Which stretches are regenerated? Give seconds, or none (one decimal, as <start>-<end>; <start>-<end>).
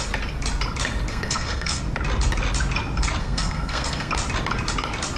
1.1-1.8; 3.2-4.1